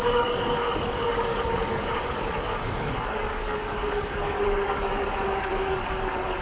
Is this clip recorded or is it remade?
remade